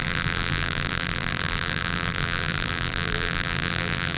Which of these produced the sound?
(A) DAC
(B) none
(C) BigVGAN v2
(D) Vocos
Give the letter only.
C